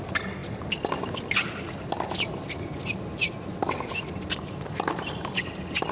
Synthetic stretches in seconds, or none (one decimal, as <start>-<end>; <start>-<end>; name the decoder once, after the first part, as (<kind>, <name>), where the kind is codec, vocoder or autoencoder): none